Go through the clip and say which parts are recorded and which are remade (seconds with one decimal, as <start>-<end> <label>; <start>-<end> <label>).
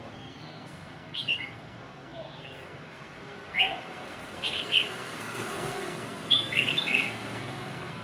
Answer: 0.0-8.0 remade